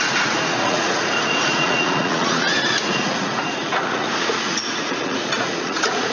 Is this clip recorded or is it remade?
remade